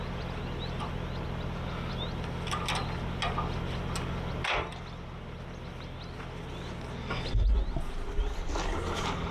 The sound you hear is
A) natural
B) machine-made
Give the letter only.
A